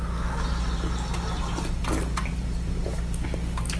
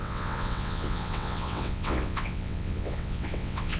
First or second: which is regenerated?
second